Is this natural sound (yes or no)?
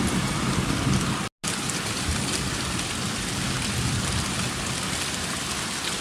yes